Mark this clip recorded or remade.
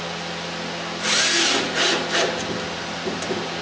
recorded